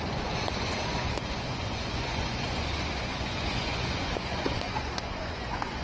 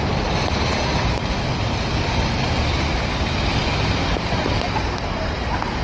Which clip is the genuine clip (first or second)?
second